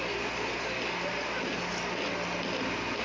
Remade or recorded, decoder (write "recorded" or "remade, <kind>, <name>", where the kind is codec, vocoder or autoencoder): recorded